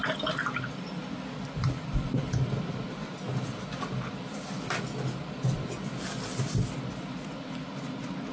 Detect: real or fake real